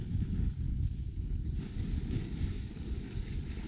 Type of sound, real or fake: fake